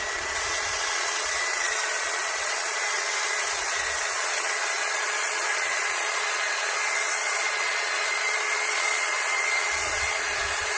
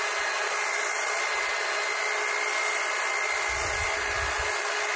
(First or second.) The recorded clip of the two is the second